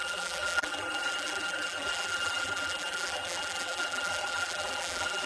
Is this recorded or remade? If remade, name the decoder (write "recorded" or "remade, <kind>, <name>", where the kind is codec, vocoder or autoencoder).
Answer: remade, vocoder, BigVGAN v2